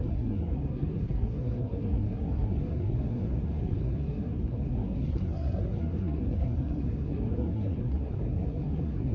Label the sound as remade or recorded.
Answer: remade